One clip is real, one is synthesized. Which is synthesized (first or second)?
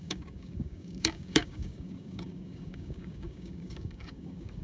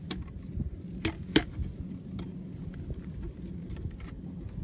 first